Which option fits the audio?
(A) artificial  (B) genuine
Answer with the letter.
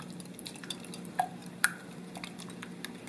B